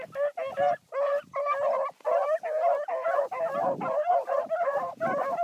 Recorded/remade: recorded